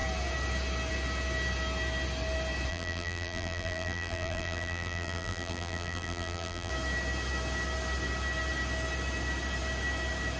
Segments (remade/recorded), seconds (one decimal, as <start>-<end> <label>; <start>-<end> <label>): 0.0-2.7 recorded; 2.7-6.7 remade; 6.7-10.4 recorded